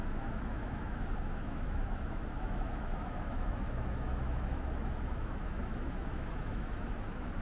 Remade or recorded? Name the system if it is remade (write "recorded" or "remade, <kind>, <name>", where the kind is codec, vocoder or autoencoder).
remade, autoencoder, DAC-VAE